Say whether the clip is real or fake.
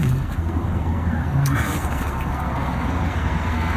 fake